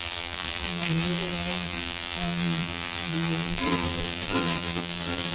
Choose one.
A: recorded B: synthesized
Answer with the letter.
B